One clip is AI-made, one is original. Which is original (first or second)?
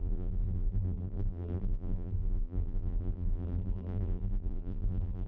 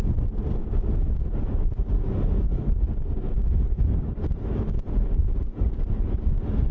second